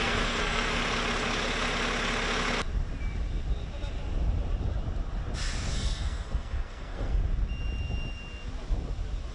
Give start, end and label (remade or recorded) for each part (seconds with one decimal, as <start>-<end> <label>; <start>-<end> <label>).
0.0-0.8 remade; 0.8-5.7 recorded; 5.7-7.2 remade; 7.2-9.3 recorded